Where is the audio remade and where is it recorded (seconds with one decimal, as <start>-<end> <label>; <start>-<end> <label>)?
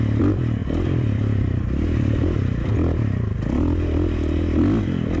0.0-0.6 recorded; 0.6-2.7 remade; 2.7-5.2 recorded